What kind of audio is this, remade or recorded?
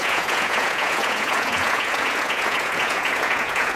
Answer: remade